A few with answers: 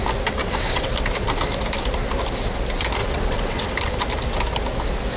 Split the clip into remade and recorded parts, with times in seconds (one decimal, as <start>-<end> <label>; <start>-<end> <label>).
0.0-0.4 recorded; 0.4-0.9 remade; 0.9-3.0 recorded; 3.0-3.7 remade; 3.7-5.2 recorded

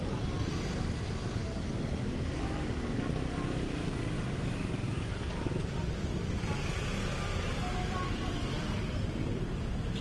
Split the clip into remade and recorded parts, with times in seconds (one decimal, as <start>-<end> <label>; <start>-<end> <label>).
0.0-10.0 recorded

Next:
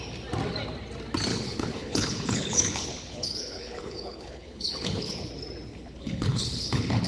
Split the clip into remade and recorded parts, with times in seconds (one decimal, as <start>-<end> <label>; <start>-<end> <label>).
0.0-1.3 recorded; 1.3-5.3 remade; 5.3-5.7 recorded; 5.7-7.1 remade